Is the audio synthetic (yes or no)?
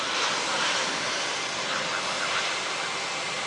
no